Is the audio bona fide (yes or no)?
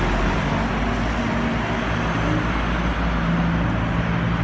yes